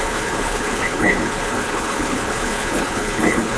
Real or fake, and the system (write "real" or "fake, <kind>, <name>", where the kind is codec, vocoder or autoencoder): fake, codec, HILCodec